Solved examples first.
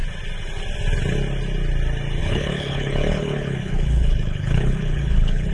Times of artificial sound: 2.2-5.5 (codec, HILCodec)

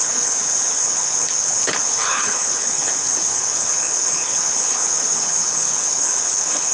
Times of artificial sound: 0.0-6.7 (codec, HILCodec)

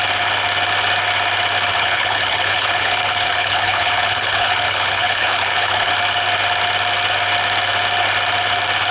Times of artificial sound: 1.7-5.9 (codec, HILCodec)

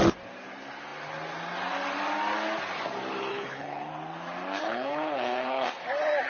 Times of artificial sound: 3.3-3.9 (codec, HILCodec); 4.6-5.8

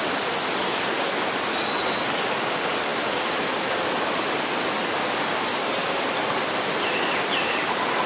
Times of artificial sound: none

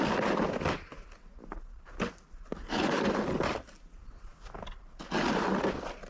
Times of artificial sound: none